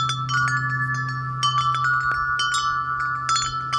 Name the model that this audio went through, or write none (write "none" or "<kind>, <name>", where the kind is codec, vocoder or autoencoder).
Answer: none